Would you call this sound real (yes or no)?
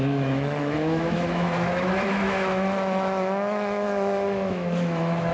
no